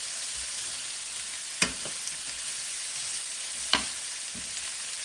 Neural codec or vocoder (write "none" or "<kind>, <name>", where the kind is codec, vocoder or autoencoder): none